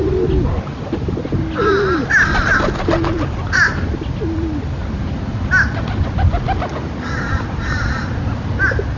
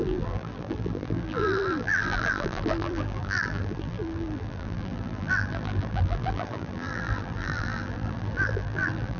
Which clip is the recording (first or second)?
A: first